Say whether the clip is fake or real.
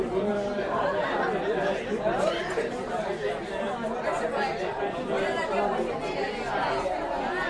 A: real